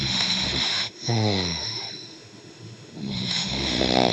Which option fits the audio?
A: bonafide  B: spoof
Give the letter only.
B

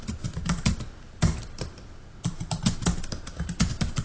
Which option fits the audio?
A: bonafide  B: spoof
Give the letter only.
A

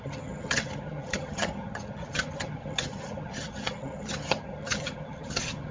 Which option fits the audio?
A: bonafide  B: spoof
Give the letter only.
B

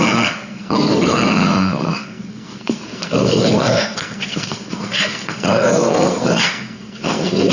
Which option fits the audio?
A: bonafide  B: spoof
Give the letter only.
B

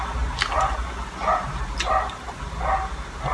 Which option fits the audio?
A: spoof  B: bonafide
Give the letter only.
B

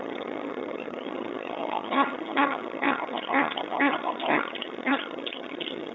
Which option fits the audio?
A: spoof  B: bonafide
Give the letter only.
A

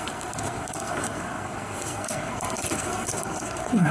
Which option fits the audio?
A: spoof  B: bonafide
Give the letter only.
A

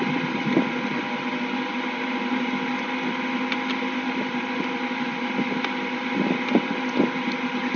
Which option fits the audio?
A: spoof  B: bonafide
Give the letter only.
B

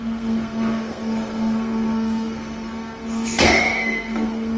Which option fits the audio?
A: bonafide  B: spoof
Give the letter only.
B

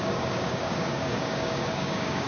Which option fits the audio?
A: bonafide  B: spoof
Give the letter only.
B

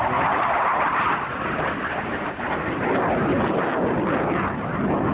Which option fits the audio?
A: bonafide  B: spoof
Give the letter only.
A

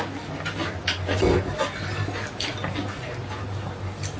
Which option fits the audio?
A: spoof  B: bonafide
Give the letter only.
B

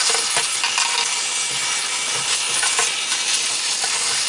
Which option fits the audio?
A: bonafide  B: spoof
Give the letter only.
A